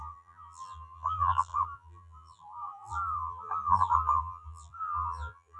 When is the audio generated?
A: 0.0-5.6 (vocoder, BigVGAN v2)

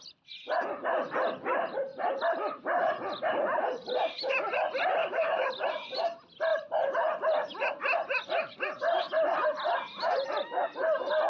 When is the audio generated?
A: 5.0-5.5 (codec, DAC)

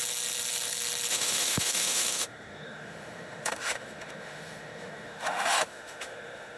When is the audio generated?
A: 1.1-6.6 (autoencoder, DAC-VAE)

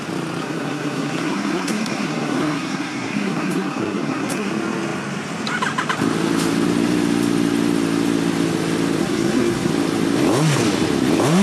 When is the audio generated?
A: 0.4-4.5 (codec, SNAC); 9.0-9.7

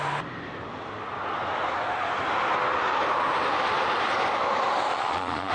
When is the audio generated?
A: 4.9-5.5 (vocoder, Vocos)